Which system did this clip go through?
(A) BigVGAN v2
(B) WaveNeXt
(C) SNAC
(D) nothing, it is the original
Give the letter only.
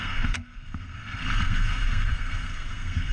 C